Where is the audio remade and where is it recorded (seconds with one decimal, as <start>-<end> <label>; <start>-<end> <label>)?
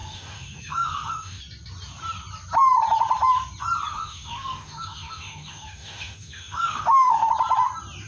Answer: 0.0-1.4 remade; 1.4-3.9 recorded; 3.9-7.3 remade; 7.3-8.1 recorded